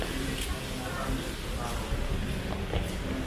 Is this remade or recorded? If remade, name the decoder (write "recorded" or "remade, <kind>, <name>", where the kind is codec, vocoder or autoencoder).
recorded